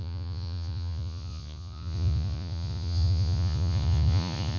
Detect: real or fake fake